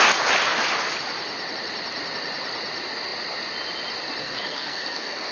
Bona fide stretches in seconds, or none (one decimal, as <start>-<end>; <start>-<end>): 0.0-4.2